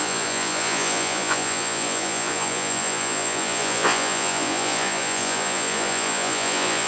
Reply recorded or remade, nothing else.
remade